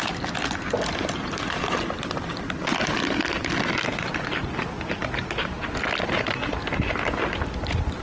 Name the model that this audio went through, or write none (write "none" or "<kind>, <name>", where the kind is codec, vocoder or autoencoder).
none